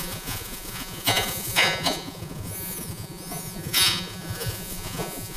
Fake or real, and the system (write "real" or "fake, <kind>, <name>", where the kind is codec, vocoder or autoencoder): fake, vocoder, Vocos